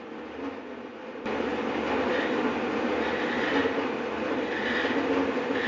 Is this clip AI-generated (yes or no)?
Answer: no